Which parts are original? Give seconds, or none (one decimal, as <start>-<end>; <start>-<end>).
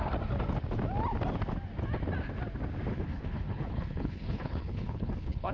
0.0-2.9